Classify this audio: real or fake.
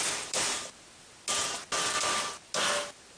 real